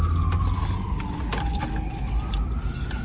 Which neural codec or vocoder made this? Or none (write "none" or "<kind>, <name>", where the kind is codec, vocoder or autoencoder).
none